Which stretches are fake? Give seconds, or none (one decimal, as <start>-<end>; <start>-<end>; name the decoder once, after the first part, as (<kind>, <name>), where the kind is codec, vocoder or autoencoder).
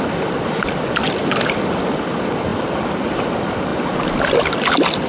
none